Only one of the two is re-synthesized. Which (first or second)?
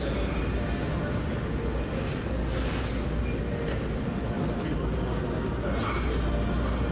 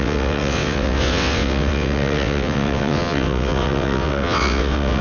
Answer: second